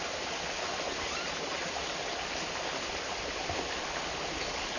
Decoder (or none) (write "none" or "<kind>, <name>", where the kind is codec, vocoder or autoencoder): none